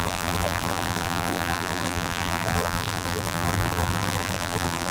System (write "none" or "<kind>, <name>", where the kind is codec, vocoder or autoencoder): vocoder, BigVGAN v2